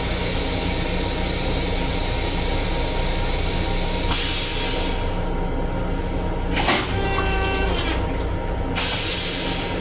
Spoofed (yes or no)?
no